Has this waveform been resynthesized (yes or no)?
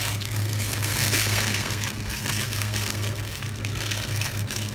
yes